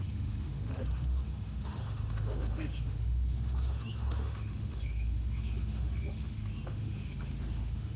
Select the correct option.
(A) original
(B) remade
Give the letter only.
B